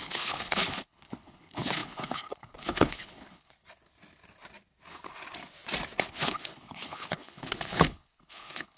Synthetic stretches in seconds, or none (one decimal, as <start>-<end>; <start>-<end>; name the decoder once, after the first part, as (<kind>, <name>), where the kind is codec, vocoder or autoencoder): 0.0-3.5 (codec, HILCodec); 6.0-8.8